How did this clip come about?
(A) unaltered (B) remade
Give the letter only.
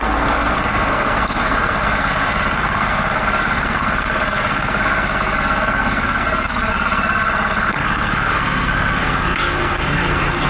B